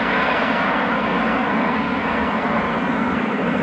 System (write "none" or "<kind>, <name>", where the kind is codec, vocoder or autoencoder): codec, SNAC